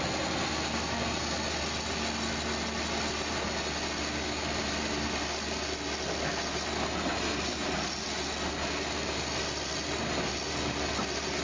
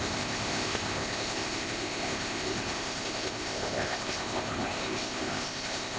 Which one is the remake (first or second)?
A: second